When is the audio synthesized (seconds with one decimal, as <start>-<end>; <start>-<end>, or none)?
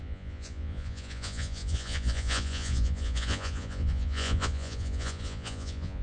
0.0-6.0